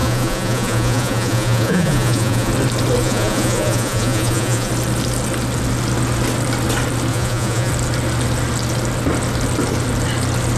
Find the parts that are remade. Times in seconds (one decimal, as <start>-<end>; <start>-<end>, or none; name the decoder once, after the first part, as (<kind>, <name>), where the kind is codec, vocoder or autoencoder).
0.0-2.5 (vocoder, Vocos); 3.0-4.7; 7.1-7.7